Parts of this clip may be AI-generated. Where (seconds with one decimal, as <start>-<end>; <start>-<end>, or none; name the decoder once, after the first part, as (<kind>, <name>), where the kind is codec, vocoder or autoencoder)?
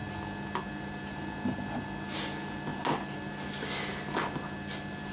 none